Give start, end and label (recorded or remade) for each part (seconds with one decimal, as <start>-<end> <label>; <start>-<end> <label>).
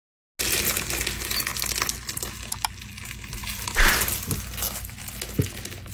0.0-5.9 recorded